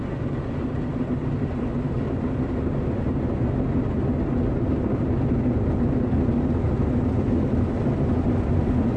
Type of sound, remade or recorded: recorded